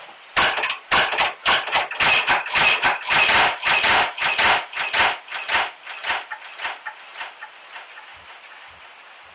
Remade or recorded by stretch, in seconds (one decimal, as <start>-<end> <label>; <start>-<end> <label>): 0.0-9.3 recorded